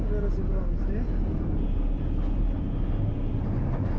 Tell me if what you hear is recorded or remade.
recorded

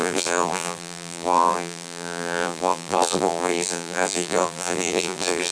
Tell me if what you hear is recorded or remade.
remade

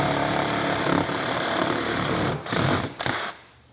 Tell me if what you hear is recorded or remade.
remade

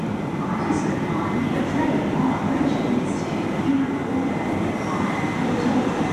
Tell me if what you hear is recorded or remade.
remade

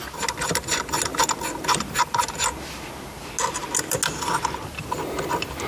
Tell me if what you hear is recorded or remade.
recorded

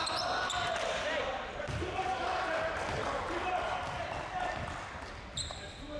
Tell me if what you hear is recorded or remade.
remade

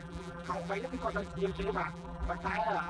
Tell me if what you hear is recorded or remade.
remade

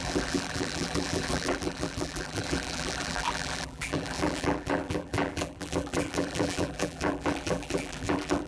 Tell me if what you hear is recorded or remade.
remade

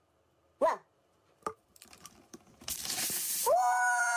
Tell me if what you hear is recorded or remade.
remade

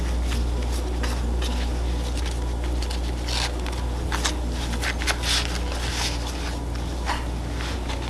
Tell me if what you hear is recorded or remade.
recorded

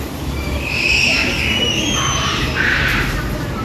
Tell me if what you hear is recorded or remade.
remade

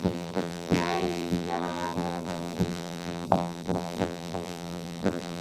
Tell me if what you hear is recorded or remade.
remade